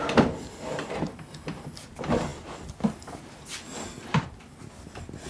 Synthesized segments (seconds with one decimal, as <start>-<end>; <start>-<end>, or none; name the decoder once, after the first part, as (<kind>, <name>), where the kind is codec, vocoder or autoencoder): none